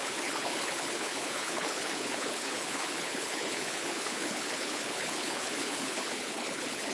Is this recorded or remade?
remade